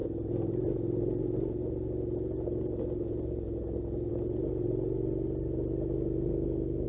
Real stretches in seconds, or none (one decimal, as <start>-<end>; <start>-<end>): 0.0-6.9